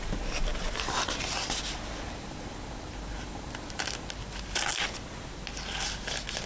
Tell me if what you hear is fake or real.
real